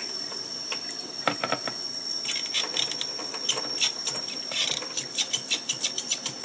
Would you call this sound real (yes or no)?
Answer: yes